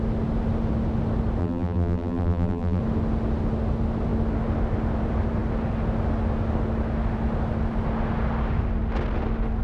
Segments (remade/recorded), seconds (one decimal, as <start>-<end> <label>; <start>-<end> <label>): 0.0-1.4 recorded; 1.4-2.8 remade; 2.8-9.6 recorded